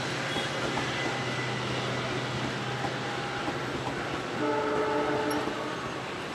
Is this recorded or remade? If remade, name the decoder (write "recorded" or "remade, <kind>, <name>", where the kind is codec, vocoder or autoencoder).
recorded